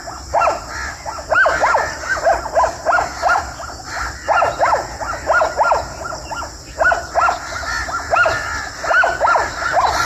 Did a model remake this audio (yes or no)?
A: no